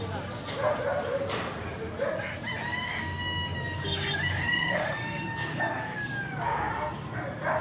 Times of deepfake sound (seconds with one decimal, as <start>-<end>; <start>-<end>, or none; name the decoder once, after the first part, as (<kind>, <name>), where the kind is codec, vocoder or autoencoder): 2.7-6.7 (codec, DAC)